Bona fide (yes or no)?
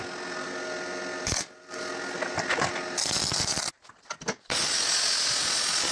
yes